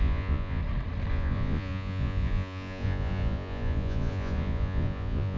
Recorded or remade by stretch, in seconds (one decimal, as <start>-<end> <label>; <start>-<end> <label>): 0.0-0.6 remade; 0.6-1.1 recorded; 1.1-5.4 remade